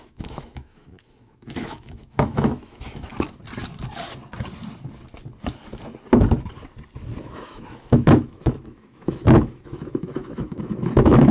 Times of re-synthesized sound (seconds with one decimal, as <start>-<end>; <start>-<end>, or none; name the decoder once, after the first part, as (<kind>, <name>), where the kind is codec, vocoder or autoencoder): 0.0-3.1 (autoencoder, DAC-VAE); 7.2-11.3